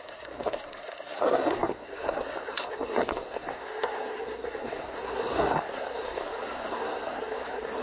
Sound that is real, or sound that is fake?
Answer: fake